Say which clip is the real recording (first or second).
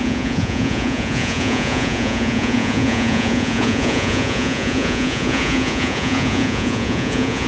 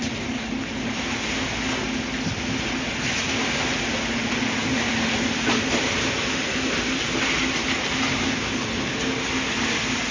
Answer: second